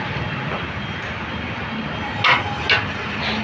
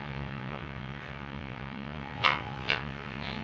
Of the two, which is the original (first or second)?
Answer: first